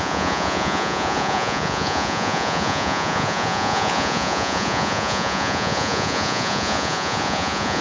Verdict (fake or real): fake